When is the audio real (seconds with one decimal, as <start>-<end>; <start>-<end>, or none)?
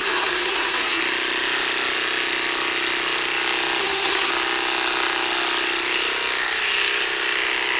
1.0-3.8; 4.3-7.8